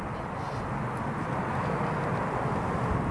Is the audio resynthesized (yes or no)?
no